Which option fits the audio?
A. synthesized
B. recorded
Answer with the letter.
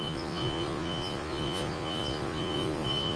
A